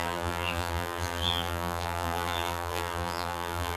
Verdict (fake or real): fake